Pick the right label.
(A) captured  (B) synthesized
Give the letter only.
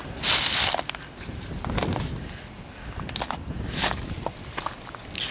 A